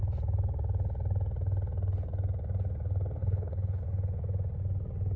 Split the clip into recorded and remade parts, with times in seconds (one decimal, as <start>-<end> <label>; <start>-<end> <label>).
0.0-3.2 recorded; 3.2-3.8 remade; 3.8-5.2 recorded